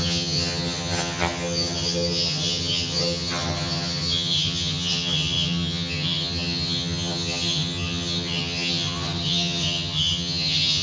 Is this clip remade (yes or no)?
yes